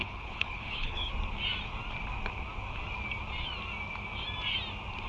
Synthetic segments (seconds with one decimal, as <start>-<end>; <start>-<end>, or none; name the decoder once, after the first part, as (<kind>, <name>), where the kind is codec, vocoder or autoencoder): 0.0-1.1 (codec, HILCodec)

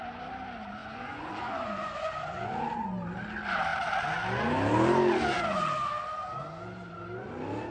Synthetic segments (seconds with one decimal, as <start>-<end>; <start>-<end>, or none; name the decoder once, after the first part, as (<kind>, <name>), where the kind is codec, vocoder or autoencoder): 0.8-2.5 (vocoder, Vocos)

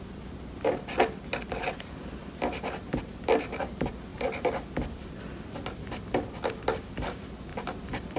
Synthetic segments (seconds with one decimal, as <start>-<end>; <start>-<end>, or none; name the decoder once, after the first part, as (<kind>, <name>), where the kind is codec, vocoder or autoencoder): none